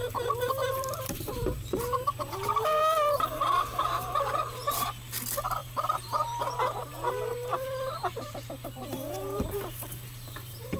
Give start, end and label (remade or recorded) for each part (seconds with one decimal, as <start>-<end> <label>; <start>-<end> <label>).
0.0-4.1 remade; 4.1-5.6 recorded; 5.6-10.8 remade